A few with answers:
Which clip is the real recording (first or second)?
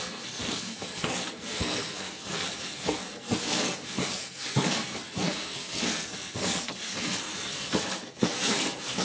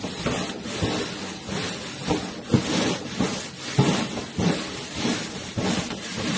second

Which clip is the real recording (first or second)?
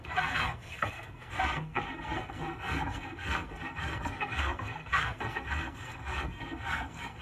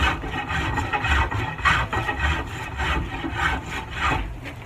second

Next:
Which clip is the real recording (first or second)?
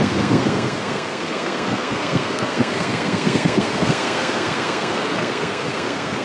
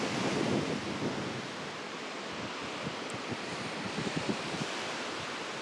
second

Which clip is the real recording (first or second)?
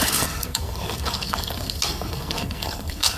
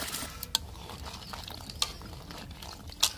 second